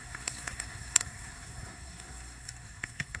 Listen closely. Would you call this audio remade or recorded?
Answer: remade